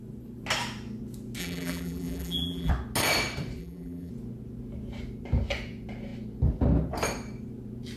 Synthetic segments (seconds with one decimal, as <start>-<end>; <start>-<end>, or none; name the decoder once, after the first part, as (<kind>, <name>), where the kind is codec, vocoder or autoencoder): 1.4-2.7 (vocoder, BigVGAN v2); 3.6-4.1